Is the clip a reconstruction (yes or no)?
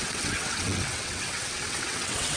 yes